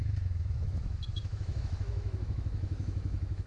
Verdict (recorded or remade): remade